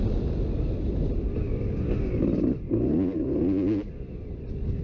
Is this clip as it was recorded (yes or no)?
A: yes